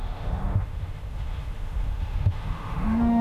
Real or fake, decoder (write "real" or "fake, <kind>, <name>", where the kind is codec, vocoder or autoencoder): fake, autoencoder, DAC-VAE